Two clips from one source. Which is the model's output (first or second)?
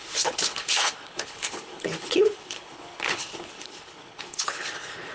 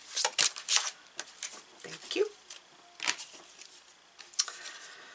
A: first